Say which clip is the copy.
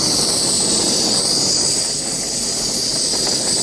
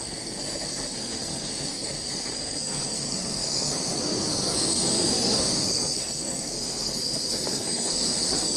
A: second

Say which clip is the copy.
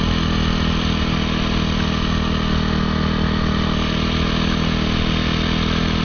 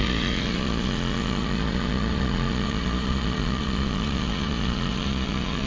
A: second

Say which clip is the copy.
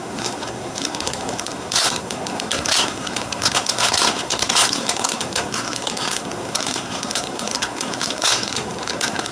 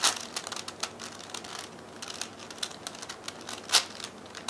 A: first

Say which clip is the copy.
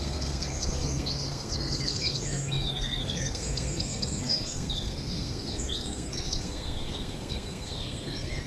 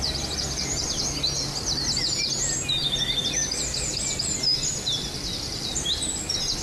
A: first